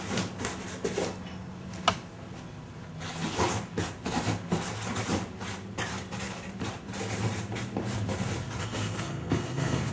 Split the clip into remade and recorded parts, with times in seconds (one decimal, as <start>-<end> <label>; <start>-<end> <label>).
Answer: 0.0-8.6 recorded; 8.6-9.9 remade